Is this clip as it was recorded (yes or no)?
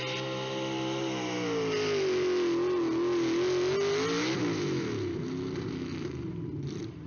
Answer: yes